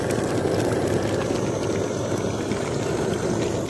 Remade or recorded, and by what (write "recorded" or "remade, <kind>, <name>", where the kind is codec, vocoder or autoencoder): recorded